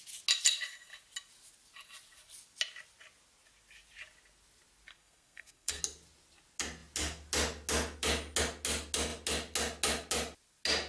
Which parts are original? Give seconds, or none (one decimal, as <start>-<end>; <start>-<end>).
0.0-4.9; 5.8-10.9